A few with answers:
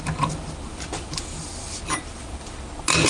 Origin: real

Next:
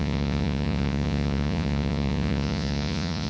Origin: fake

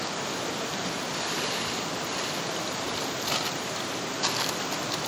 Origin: real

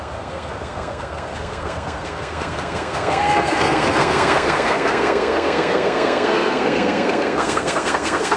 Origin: fake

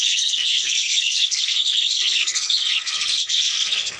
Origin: fake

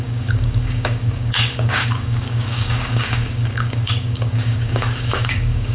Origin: fake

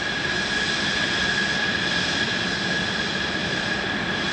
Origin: real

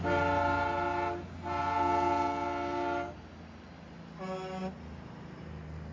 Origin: real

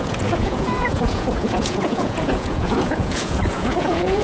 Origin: fake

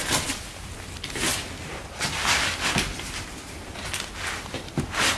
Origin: real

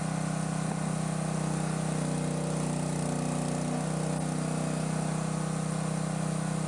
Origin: real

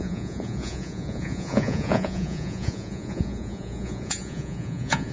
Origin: fake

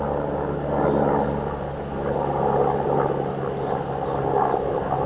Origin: real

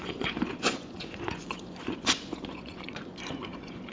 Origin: fake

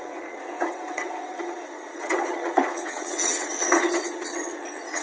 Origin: fake